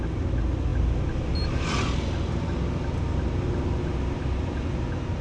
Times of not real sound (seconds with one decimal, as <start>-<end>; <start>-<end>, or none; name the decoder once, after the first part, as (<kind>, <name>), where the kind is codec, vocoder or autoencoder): none